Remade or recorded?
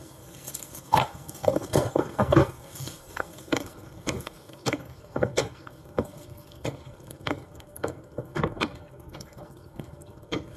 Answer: remade